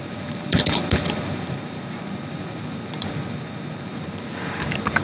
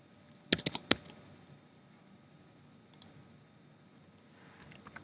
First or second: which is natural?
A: second